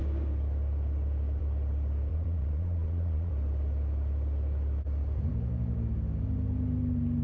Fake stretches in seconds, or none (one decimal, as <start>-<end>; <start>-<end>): 2.1-3.3